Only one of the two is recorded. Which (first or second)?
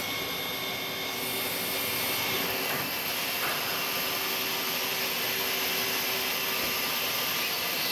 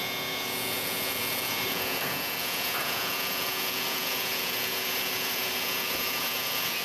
first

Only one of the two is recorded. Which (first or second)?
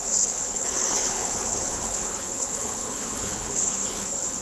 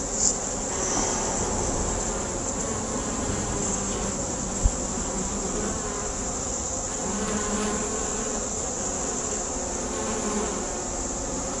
second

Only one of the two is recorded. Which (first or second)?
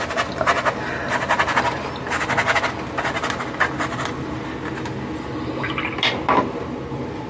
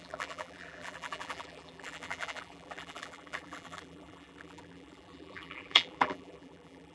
first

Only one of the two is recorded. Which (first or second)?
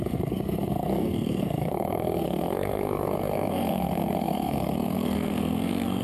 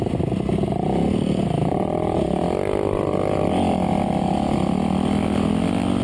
second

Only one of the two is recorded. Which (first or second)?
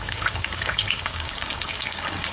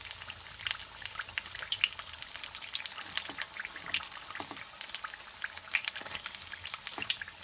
second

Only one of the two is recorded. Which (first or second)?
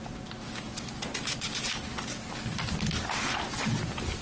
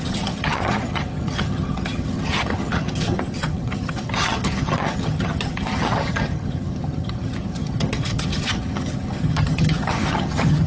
first